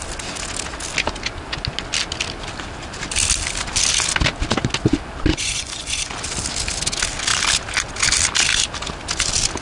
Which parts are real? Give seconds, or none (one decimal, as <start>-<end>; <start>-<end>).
0.0-5.3; 6.1-9.6